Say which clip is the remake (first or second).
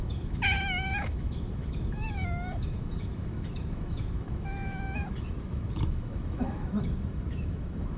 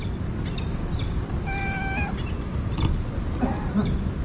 first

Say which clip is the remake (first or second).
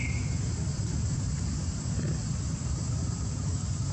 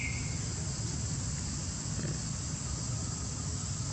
first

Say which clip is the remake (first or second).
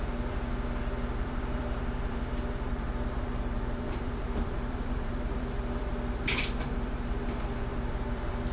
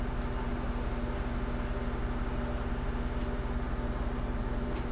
first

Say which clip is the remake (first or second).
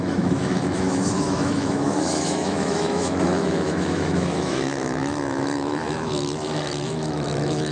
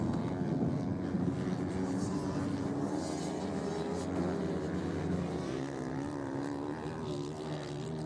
first